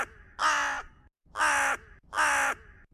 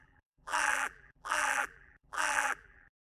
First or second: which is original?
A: first